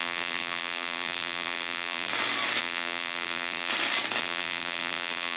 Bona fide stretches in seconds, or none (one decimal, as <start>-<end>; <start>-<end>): 2.1-2.6; 3.7-4.2